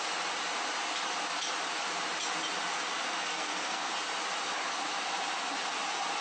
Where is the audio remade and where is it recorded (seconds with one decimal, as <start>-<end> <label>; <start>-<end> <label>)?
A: 0.0-3.3 recorded; 3.3-3.9 remade; 3.9-6.2 recorded